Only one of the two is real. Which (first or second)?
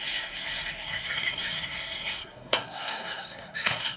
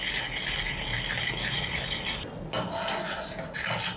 second